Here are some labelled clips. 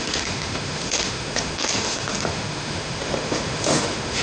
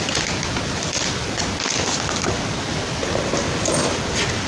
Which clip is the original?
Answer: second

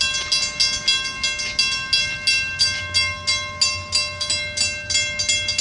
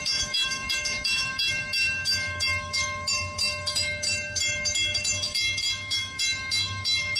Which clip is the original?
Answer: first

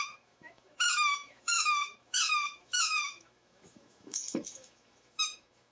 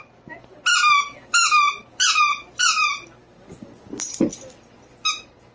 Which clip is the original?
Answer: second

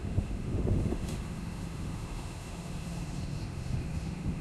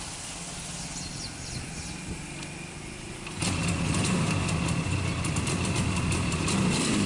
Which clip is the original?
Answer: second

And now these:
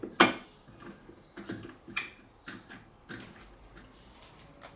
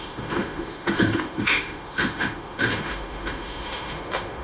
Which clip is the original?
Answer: first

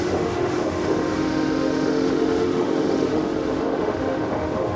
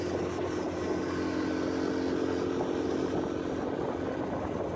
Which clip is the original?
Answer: second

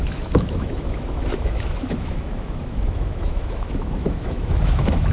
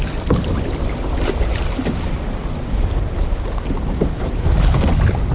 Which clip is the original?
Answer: second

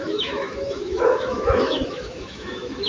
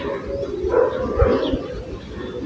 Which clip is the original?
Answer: second